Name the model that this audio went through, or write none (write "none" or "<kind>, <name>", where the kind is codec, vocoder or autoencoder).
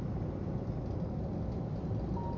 none